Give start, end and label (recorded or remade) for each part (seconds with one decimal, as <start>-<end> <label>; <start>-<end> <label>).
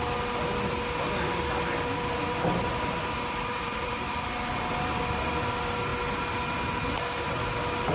0.0-3.5 recorded; 3.5-5.3 remade; 5.3-7.9 recorded